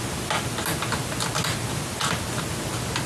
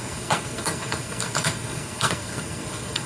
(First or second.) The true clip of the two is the first